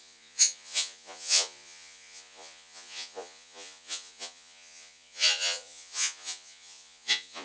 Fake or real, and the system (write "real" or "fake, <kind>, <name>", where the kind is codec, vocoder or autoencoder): fake, vocoder, Vocos